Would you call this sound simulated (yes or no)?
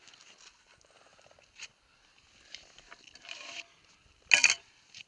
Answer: no